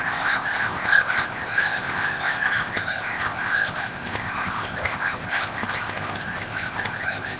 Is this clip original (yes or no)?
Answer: no